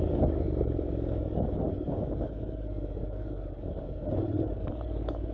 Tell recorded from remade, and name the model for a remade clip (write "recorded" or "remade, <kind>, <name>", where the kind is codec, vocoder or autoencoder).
remade, codec, DAC